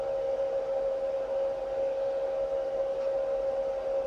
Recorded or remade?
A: recorded